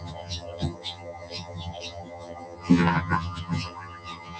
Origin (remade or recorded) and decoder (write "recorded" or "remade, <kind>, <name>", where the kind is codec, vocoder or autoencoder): remade, vocoder, HiFi-GAN